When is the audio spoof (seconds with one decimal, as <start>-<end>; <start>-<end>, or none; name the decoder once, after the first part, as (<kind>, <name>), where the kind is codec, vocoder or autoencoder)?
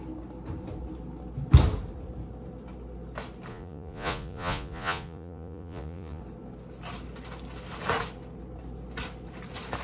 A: 3.5-6.2 (vocoder, Vocos)